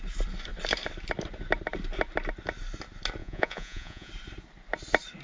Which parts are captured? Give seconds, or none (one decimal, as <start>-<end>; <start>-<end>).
0.0-3.2; 4.1-5.2